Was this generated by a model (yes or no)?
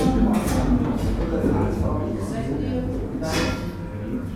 no